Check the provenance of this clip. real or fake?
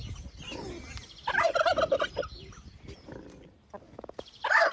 real